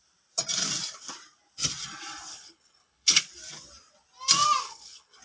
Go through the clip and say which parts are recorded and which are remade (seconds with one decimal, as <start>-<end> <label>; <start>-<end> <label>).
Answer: 0.0-2.3 recorded; 2.3-3.2 remade; 3.2-4.6 recorded; 4.6-5.2 remade